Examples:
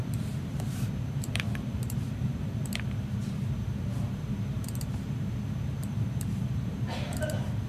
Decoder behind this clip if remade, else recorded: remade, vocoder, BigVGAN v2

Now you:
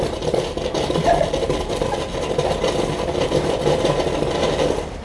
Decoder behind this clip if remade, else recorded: recorded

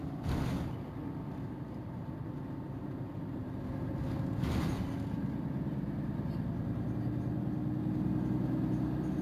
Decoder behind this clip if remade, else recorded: recorded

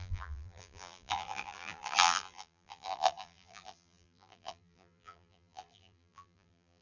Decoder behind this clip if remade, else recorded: remade, vocoder, BigVGAN v2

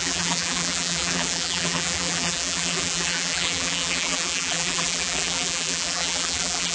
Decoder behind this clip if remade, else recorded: remade, vocoder, BigVGAN v2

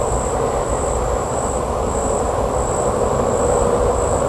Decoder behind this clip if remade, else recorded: remade, vocoder, BigVGAN v2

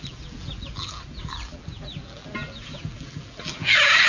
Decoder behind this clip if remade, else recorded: remade, vocoder, BigVGAN v2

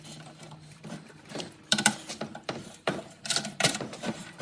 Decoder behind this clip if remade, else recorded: remade, vocoder, BigVGAN v2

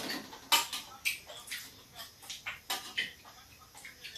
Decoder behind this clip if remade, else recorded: recorded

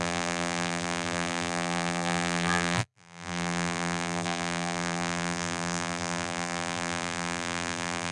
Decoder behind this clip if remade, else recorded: remade, vocoder, BigVGAN v2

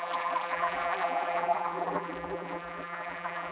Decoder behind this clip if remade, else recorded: remade, vocoder, BigVGAN v2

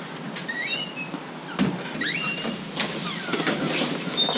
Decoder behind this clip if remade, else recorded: remade, vocoder, BigVGAN v2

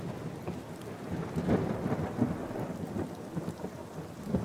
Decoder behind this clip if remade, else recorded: recorded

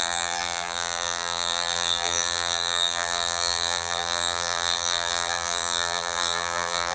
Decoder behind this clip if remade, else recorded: remade, vocoder, BigVGAN v2